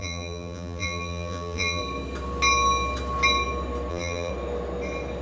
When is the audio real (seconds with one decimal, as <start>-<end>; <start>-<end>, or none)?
1.8-3.9; 4.3-5.2